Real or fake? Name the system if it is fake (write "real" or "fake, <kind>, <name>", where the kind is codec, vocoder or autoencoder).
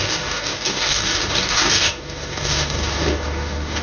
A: fake, codec, DAC